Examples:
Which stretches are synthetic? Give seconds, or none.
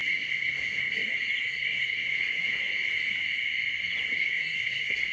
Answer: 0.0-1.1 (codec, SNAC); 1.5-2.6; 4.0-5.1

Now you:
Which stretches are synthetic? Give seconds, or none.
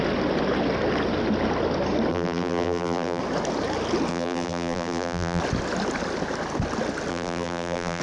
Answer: 2.1-3.2 (vocoder, BigVGAN v2); 4.1-5.4; 7.1-8.0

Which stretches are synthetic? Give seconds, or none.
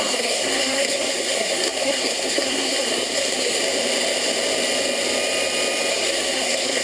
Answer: 0.0-3.6 (codec, SNAC); 5.9-6.8